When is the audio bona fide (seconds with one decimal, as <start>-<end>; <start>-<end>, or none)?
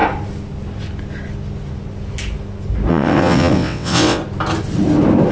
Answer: 0.0-2.9; 4.2-5.3